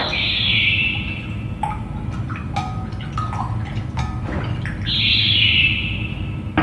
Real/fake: real